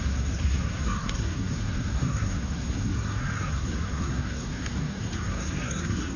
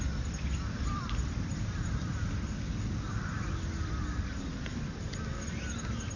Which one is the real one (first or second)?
second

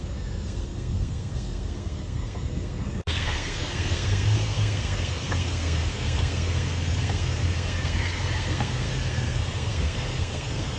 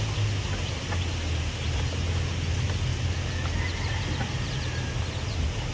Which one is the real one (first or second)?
second